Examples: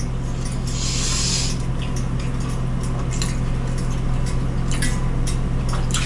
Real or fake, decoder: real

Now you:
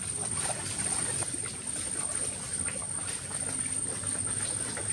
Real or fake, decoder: real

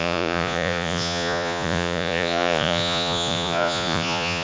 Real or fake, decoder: fake, vocoder, Vocos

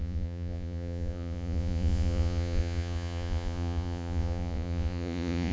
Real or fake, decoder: fake, vocoder, Vocos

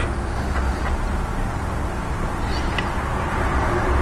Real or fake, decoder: real